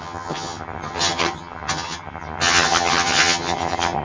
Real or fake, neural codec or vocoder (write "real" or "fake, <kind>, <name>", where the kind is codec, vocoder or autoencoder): fake, vocoder, HiFi-GAN